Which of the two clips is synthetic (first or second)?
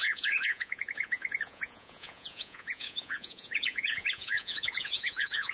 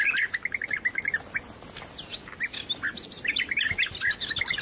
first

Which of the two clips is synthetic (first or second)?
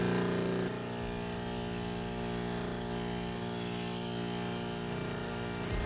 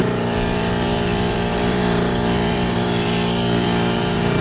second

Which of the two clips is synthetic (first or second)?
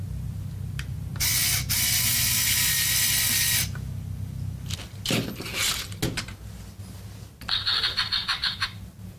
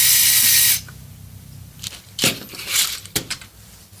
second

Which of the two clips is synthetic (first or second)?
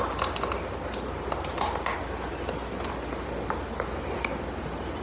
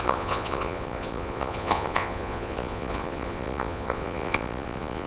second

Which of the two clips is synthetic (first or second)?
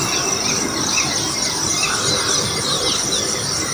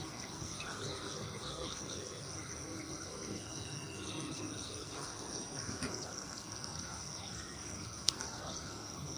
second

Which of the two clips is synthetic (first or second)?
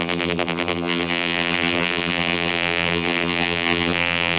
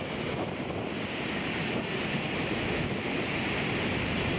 first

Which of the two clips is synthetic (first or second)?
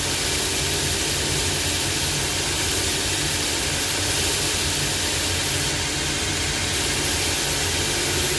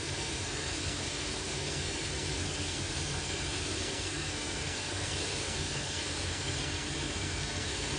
second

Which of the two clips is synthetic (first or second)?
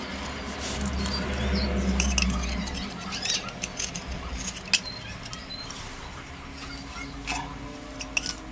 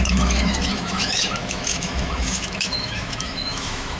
second